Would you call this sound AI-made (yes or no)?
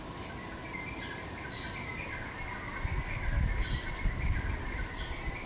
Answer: no